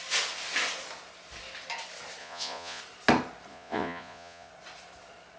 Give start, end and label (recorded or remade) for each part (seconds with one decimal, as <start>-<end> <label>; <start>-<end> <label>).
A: 0.0-2.2 recorded; 2.2-2.8 remade; 2.8-3.5 recorded; 3.5-4.5 remade; 4.5-5.4 recorded